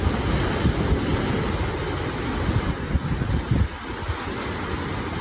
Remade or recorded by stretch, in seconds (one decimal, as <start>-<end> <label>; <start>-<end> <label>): 0.0-5.2 recorded

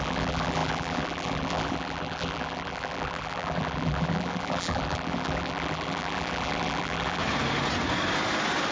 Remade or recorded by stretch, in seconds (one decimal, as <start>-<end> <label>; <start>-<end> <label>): 0.0-7.2 remade; 7.2-8.7 recorded

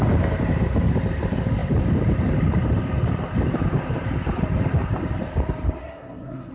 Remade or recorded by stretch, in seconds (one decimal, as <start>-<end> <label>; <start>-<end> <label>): 0.0-5.8 recorded; 5.8-6.5 remade

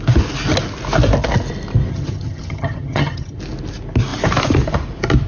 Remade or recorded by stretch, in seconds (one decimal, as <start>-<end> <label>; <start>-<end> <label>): 0.0-1.9 recorded; 1.9-3.4 remade; 3.4-5.3 recorded